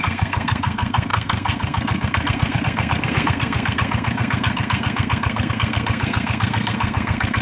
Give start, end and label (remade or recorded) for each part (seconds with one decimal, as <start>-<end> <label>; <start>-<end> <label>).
0.0-7.4 remade